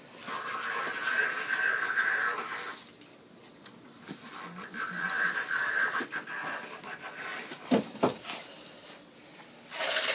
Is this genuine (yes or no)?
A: no